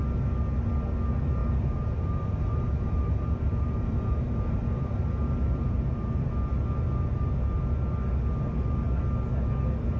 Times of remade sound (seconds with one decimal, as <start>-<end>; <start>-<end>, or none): 1.4-6.3